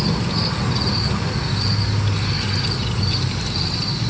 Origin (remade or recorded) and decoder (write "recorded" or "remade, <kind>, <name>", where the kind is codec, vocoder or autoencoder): recorded